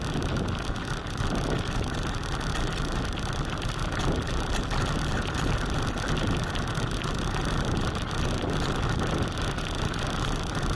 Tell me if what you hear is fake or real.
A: real